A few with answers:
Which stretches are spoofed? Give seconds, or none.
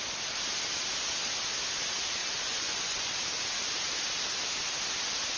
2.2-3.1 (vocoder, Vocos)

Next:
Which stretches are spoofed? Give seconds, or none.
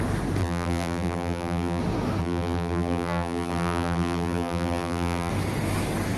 0.4-1.8 (vocoder, BigVGAN v2); 2.2-5.3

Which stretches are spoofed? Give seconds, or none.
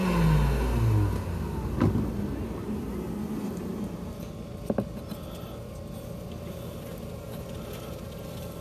none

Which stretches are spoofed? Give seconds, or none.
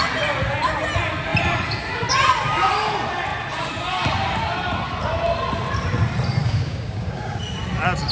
6.4-7.4 (codec, DAC)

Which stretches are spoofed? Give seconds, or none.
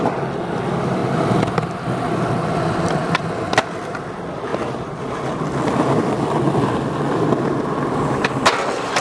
none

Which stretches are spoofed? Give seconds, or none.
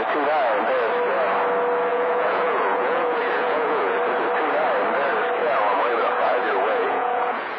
1.9-4.0 (vocoder, Vocos); 5.4-7.6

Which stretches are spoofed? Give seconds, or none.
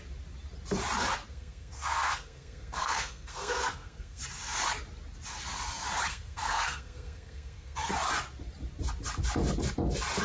1.3-4.2 (codec, SNAC); 6.1-7.9